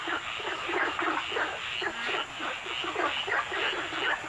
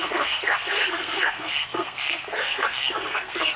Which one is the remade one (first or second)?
second